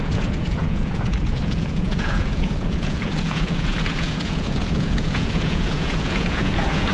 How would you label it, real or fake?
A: fake